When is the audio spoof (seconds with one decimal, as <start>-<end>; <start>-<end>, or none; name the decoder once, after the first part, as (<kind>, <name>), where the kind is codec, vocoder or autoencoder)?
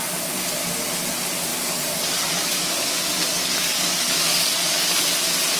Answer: 1.5-4.9 (codec, DAC)